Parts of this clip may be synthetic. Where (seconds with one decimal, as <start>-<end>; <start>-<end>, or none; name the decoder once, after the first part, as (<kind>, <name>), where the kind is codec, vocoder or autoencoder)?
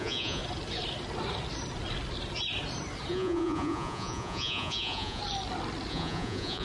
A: 0.0-0.4 (vocoder, Vocos); 3.1-5.2; 5.9-6.6